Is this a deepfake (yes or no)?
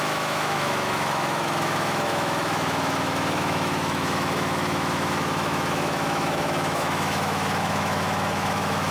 yes